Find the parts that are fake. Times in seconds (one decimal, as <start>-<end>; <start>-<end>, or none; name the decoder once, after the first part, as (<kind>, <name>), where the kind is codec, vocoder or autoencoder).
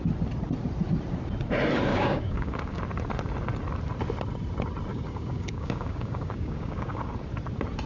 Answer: 1.9-2.8 (codec, DAC); 4.9-7.0